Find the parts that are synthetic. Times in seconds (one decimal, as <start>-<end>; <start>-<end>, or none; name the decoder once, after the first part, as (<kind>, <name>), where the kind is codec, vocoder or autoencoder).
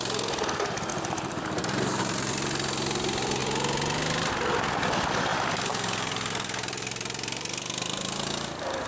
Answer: 0.9-2.3 (vocoder, BigVGAN v2); 5.3-8.9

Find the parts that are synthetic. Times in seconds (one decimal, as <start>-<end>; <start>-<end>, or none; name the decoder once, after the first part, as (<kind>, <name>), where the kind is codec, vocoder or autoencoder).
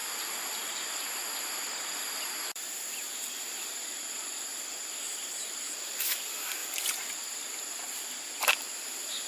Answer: 0.0-4.1 (vocoder, BigVGAN v2); 4.5-5.7; 6.6-7.3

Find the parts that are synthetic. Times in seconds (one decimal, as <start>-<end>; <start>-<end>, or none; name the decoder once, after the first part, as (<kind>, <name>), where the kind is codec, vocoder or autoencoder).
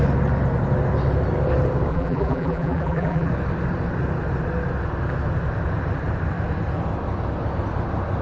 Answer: 1.9-3.3 (vocoder, BigVGAN v2)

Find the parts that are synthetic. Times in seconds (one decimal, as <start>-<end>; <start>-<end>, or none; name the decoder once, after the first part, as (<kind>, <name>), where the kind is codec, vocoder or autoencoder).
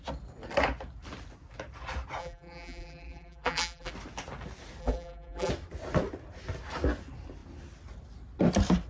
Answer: 2.2-3.9 (vocoder, BigVGAN v2); 4.8-5.5